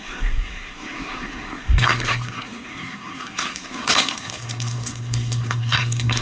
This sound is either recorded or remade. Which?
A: remade